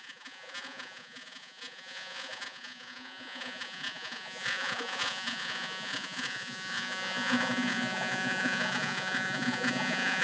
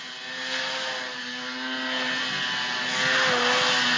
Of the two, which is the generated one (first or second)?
first